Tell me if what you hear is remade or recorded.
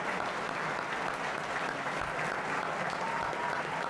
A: recorded